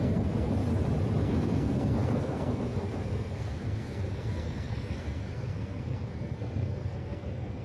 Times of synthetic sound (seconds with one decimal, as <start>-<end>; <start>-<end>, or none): 0.0-0.6; 1.2-7.6

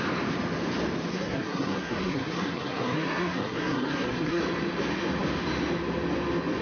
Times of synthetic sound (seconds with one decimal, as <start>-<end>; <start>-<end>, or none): 1.1-4.4

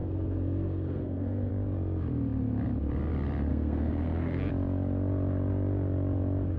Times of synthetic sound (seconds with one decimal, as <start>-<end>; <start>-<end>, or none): 0.0-1.5; 3.5-4.5

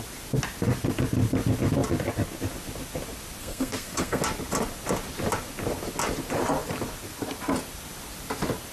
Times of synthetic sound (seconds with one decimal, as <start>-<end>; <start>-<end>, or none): 3.4-4.2

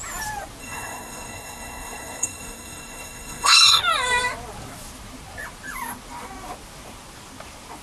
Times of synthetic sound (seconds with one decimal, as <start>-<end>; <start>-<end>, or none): 0.6-3.8

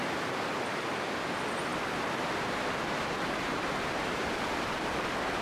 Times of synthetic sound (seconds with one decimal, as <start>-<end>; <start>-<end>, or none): none

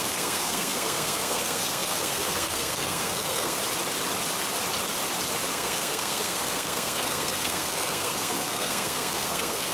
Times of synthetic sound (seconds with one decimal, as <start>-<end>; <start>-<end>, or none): 0.0-3.6; 5.5-9.7

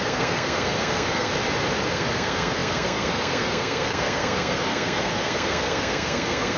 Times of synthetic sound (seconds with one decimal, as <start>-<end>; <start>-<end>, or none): 0.0-1.3; 1.9-6.6